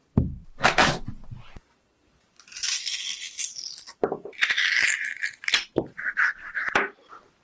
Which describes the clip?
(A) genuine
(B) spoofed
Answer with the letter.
A